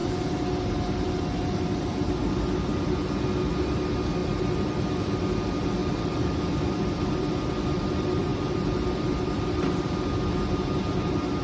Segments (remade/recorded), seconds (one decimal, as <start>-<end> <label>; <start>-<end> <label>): 0.0-4.2 recorded; 4.2-5.2 remade; 5.2-5.8 recorded; 5.8-7.3 remade; 7.3-8.3 recorded; 8.3-9.6 remade; 9.6-11.4 recorded

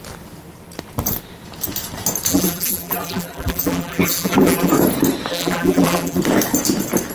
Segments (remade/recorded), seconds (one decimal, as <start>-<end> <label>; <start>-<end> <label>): 0.0-2.3 recorded; 2.3-4.7 remade; 4.7-5.3 recorded; 5.3-6.2 remade; 6.2-7.1 recorded

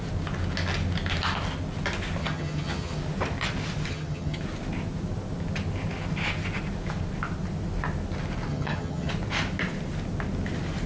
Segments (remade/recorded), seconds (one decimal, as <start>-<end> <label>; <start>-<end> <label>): 0.0-2.2 recorded; 2.2-3.0 remade; 3.0-3.9 recorded; 3.9-4.4 remade; 4.4-8.5 recorded; 8.5-9.1 remade; 9.1-10.9 recorded

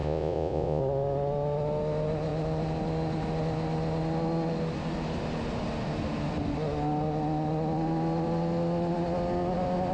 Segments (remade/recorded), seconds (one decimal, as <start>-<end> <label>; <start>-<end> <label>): 0.0-0.8 remade; 0.8-9.9 recorded

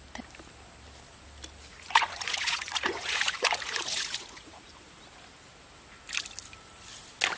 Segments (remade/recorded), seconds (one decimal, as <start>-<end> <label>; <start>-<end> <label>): 0.0-1.7 recorded; 1.7-4.7 remade; 4.7-7.4 recorded

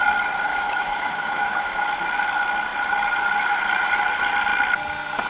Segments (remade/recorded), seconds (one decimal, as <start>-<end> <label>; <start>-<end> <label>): 0.0-0.5 recorded; 0.5-1.8 remade; 1.8-5.3 recorded

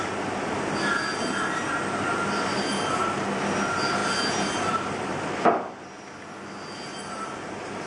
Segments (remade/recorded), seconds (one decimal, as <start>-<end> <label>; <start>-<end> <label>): 0.0-7.9 recorded

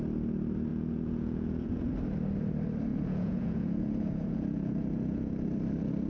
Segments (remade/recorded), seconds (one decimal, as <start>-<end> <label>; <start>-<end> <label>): 0.0-0.7 recorded; 0.7-1.9 remade; 1.9-2.9 recorded; 2.9-5.3 remade; 5.3-6.1 recorded